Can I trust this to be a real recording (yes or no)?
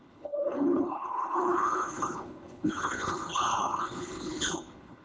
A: no